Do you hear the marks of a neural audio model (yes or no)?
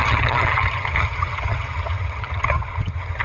yes